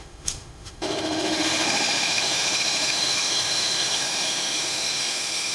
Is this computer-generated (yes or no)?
yes